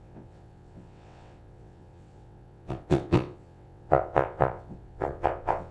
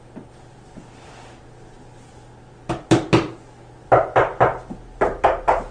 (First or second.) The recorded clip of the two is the second